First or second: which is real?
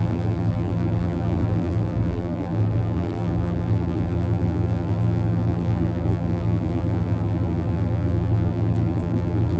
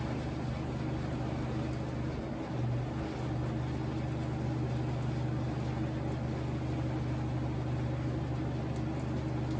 second